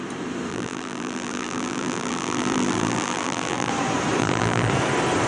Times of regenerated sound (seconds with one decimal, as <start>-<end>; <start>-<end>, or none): 0.5-3.7; 4.2-4.7